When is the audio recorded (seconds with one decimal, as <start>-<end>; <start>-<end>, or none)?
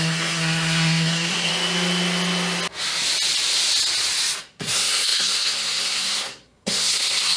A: 1.5-4.4